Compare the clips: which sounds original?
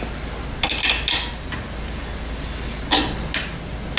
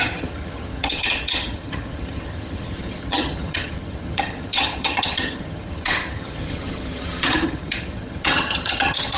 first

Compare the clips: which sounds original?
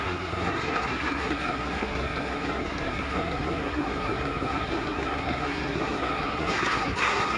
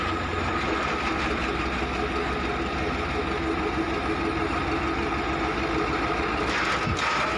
second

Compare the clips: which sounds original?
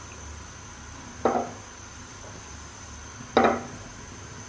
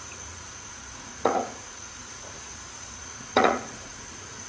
first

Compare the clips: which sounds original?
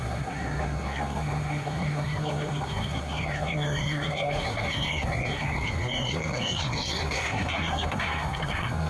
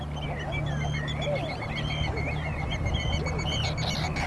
second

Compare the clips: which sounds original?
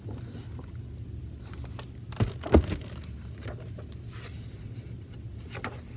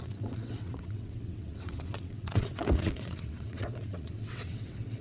first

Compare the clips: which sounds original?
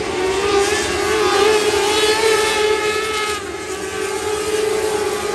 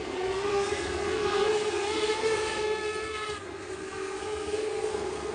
first